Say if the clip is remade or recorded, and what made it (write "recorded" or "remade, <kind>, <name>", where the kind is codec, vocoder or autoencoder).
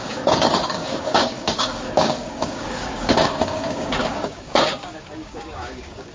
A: remade, codec, DAC